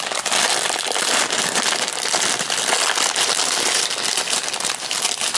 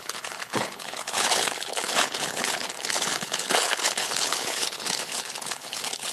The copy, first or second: second